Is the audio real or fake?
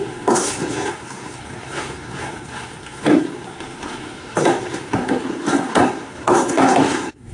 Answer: fake